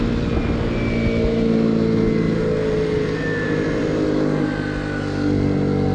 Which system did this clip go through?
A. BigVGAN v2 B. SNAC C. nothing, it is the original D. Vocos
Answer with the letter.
C